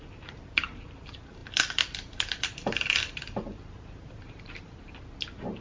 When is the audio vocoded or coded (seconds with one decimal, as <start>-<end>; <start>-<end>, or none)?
1.4-4.8